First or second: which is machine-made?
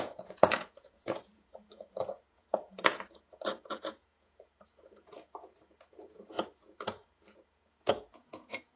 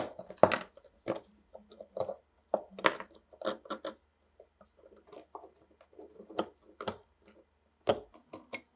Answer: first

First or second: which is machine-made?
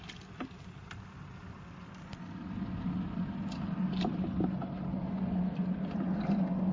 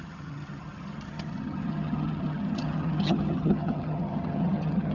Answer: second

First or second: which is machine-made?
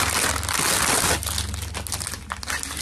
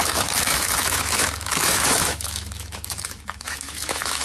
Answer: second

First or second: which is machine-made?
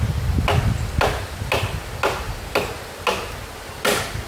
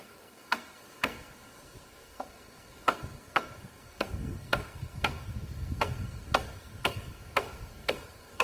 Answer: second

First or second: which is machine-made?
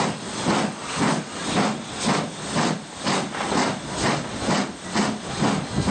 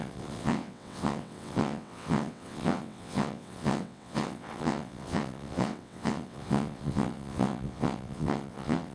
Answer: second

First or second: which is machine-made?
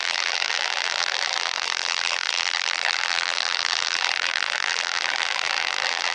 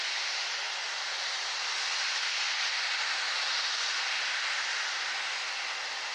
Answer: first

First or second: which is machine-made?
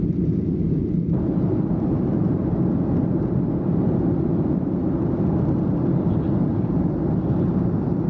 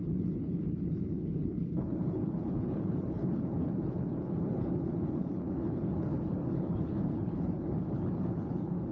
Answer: second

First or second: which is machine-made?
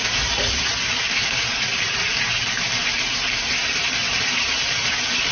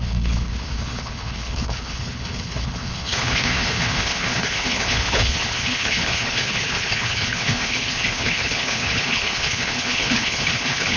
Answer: second